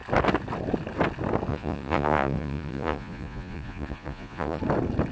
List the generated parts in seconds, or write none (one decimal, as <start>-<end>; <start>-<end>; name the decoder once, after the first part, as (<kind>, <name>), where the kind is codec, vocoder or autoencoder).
1.5-4.6 (vocoder, Vocos)